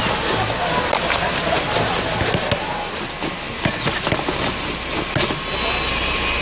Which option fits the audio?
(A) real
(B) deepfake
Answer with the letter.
A